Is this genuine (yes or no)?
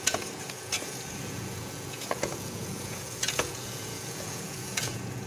no